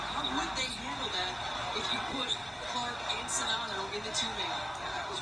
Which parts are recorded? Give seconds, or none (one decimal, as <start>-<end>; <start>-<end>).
0.0-1.9; 2.7-5.2